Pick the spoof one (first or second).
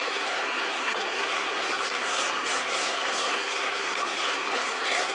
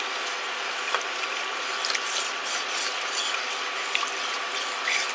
first